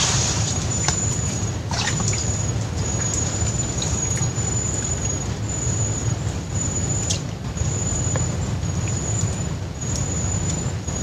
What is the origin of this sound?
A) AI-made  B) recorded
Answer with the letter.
A